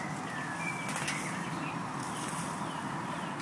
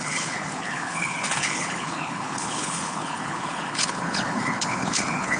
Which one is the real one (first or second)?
first